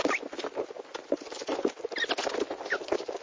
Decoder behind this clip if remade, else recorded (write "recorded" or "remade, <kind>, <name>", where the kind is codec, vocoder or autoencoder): recorded